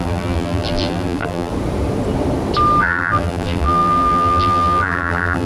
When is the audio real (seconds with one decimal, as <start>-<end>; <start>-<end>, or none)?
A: 1.5-2.8